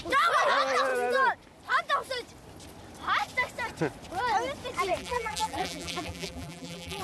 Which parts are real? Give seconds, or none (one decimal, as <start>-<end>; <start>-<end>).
0.0-5.0